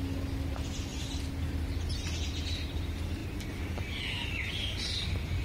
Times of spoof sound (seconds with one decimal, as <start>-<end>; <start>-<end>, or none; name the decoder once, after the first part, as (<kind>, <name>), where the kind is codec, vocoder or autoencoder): 0.9-1.5 (vocoder, BigVGAN v2)